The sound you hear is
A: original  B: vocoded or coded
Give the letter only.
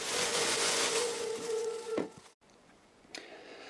B